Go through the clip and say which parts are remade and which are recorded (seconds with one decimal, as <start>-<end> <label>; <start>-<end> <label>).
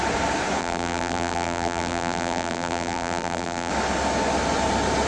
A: 0.0-0.6 recorded; 0.6-3.7 remade; 3.7-5.1 recorded